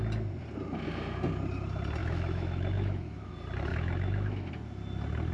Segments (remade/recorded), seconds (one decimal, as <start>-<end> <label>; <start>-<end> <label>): 0.0-2.0 recorded; 2.0-3.3 remade; 3.3-3.7 recorded; 3.7-4.5 remade; 4.5-5.3 recorded